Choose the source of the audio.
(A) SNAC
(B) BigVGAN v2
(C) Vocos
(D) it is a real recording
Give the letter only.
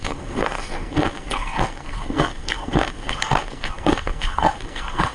A